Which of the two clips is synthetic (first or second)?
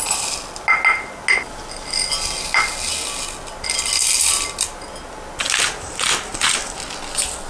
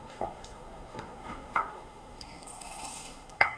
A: second